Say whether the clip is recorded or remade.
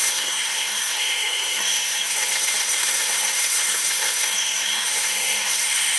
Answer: remade